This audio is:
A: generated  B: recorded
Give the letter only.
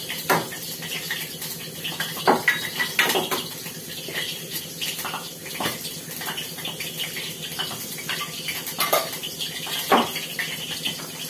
B